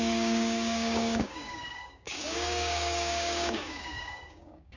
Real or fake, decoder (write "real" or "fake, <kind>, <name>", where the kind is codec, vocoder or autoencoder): fake, codec, DAC